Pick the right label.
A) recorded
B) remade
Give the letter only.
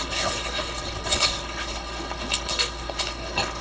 B